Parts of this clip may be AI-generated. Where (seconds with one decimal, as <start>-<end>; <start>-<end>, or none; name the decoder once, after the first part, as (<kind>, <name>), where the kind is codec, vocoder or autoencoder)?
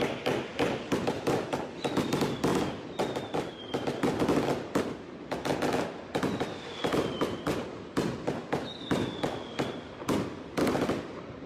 none